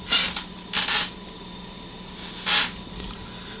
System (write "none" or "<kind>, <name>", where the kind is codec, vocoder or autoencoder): none